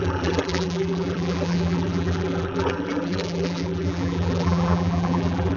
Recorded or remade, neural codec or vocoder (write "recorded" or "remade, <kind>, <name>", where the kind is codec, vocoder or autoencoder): remade, vocoder, BigVGAN v2